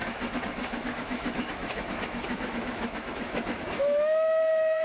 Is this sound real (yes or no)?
no